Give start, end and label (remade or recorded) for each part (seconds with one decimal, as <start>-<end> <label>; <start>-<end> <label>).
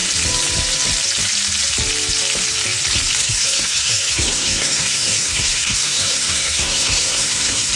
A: 0.0-3.2 recorded; 3.2-7.7 remade